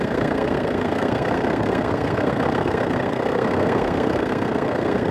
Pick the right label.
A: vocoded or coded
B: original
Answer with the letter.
A